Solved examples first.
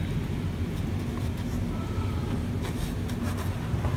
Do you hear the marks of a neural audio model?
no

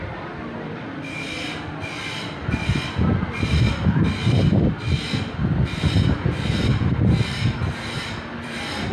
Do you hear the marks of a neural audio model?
yes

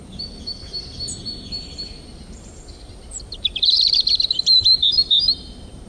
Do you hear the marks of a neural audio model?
yes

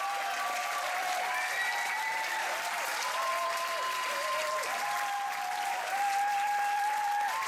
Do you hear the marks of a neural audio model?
yes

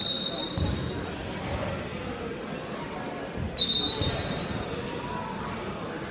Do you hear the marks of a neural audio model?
no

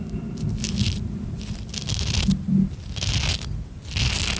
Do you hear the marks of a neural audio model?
no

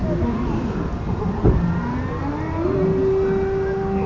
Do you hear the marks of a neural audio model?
no